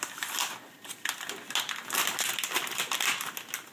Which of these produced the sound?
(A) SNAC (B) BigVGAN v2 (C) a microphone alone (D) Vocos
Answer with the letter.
C